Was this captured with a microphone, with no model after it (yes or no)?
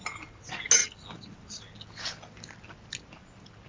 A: yes